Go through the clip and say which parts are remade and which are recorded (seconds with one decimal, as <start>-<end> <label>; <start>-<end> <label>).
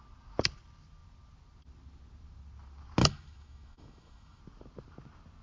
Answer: 0.0-3.0 recorded; 3.0-4.4 remade; 4.4-5.4 recorded